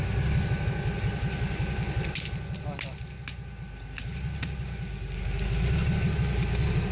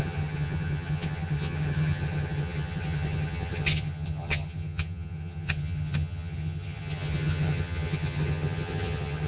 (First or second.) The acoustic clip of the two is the first